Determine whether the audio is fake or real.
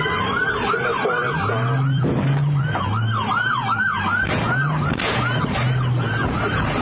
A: real